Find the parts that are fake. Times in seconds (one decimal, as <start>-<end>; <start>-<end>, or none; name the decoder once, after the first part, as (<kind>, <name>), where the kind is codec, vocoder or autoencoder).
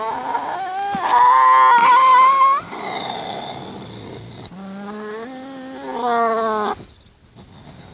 none